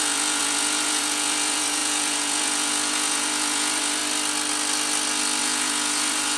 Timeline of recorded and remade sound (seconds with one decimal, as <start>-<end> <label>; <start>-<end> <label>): 0.0-4.0 remade; 4.0-5.4 recorded; 5.4-6.4 remade